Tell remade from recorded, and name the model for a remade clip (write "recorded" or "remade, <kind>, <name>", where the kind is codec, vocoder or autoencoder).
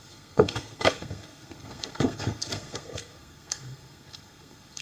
remade, codec, SNAC